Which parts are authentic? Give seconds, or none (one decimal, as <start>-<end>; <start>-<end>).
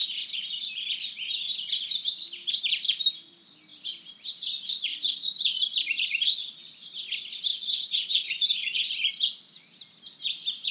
0.0-7.5; 8.9-10.7